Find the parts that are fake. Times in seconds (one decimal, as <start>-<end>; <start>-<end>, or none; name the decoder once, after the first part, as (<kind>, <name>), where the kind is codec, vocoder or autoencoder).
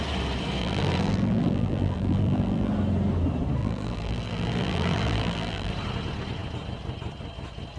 0.6-2.7 (vocoder, BigVGAN v2); 3.6-5.7